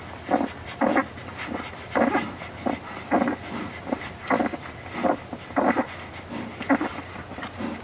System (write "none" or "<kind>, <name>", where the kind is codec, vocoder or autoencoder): none